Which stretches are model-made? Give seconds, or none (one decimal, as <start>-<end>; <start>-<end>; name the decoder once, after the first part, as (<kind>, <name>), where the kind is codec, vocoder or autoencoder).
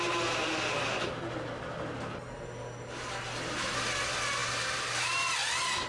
none